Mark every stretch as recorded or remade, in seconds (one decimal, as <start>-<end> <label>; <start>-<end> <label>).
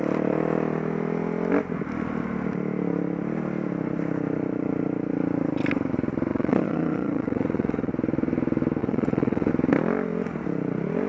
0.0-6.3 recorded; 6.3-7.9 remade; 7.9-8.8 recorded; 8.8-9.5 remade; 9.5-11.1 recorded